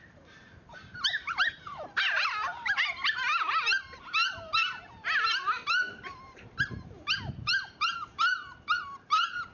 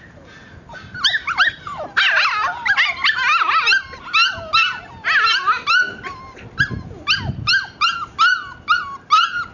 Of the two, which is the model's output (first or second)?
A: first